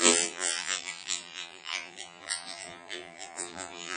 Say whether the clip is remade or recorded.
remade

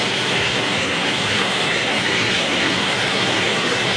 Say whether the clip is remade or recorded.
remade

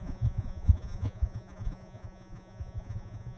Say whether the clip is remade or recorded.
remade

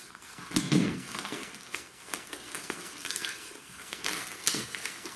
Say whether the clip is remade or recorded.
remade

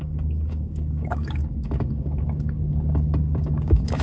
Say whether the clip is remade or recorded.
remade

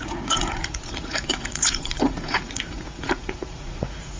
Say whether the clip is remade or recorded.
remade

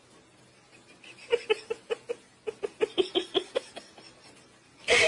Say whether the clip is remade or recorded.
recorded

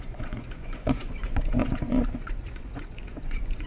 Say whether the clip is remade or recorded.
remade